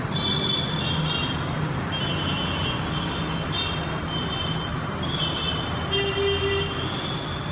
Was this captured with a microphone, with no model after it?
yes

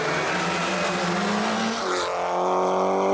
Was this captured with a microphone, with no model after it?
yes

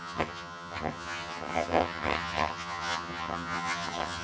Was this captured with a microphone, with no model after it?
no